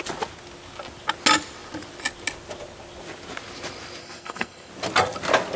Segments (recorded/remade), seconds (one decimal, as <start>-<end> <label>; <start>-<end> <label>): 0.0-4.0 recorded; 4.0-4.7 remade; 4.7-5.6 recorded